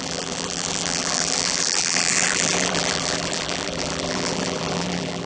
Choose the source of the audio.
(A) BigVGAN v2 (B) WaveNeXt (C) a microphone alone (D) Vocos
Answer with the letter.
A